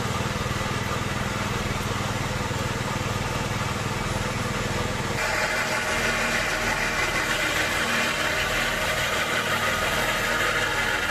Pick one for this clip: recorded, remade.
recorded